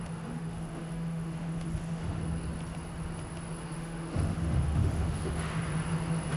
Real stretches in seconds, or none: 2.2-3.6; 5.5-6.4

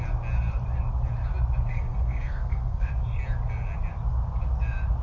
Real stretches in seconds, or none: 0.0-1.7; 2.9-5.0

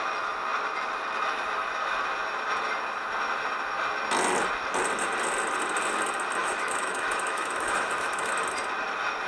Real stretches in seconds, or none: 0.0-6.4; 8.3-9.3

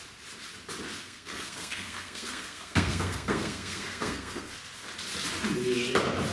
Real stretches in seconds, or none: 0.0-1.0; 4.5-6.3

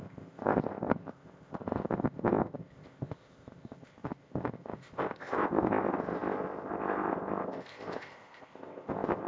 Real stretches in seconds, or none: none

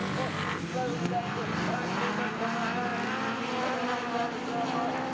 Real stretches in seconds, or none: 0.0-5.1

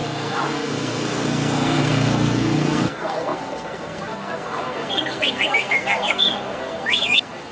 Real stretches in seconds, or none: none

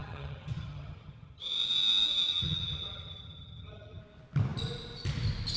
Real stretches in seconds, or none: 1.4-2.3; 4.0-5.6